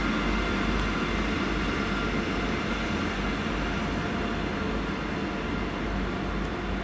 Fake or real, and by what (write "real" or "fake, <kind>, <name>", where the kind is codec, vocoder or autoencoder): real